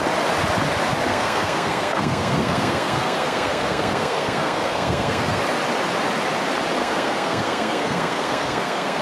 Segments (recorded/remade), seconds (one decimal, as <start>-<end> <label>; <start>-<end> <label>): 0.0-1.1 recorded; 1.1-5.4 remade; 5.4-6.8 recorded; 6.8-9.0 remade